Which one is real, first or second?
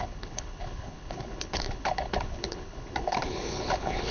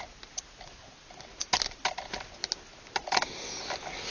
second